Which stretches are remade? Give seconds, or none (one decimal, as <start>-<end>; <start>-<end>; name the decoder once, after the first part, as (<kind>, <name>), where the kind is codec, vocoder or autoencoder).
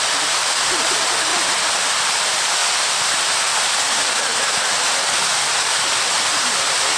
none